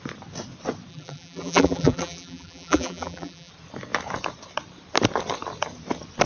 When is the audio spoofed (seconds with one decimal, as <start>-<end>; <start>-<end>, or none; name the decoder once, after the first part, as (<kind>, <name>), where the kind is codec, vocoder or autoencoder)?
0.9-3.5 (vocoder, BigVGAN v2)